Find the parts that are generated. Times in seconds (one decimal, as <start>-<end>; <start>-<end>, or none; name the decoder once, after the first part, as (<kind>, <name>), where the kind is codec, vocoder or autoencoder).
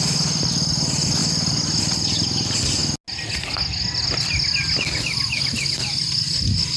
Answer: none